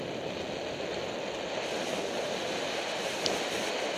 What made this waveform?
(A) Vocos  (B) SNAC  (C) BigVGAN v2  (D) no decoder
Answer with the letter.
D